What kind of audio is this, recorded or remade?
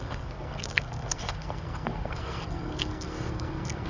remade